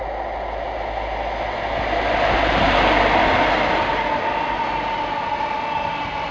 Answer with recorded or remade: recorded